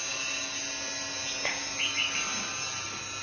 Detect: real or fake real